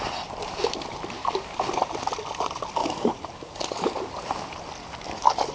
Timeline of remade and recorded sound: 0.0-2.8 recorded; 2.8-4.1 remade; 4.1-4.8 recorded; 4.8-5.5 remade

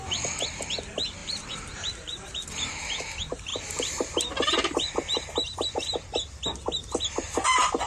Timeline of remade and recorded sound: 0.0-1.2 recorded; 1.2-2.3 remade; 2.3-7.9 recorded

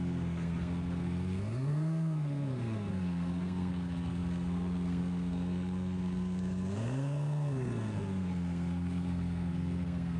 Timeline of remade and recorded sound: 0.0-10.2 remade

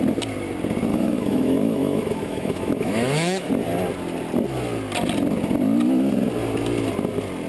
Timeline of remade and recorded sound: 0.0-0.9 recorded; 0.9-3.5 remade; 3.5-7.5 recorded

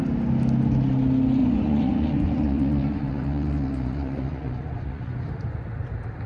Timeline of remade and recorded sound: 0.0-1.4 recorded; 1.4-5.2 remade; 5.2-6.3 recorded